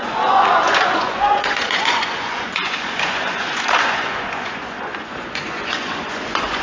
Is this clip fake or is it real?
fake